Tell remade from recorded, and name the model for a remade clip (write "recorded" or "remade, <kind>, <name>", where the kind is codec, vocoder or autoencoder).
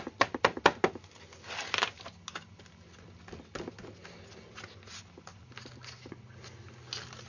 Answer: recorded